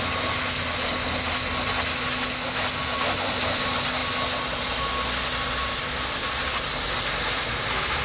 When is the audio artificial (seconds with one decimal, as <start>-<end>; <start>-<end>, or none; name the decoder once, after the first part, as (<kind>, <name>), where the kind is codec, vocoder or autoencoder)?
none